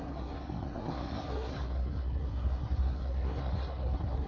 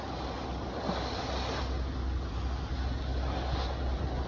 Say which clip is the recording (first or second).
second